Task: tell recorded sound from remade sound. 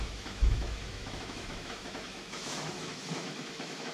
remade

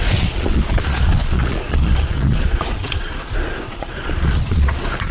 remade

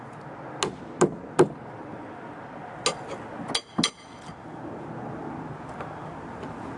recorded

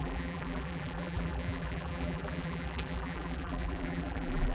remade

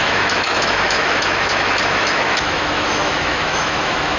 remade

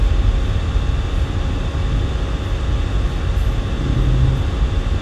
recorded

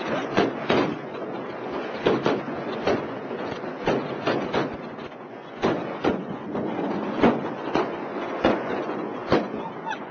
remade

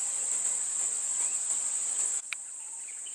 recorded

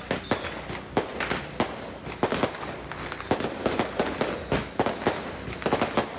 recorded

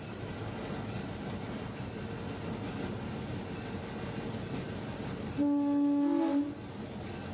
recorded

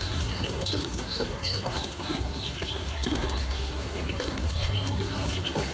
remade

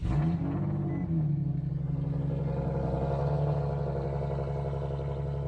recorded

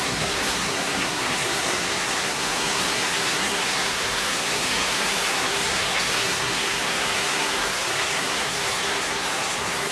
remade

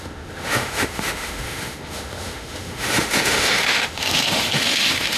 remade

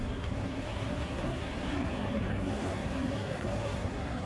remade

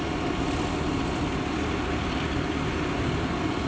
recorded